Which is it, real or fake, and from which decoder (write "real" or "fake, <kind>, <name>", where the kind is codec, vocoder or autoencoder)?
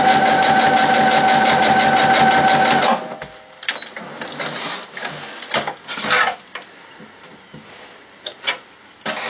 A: real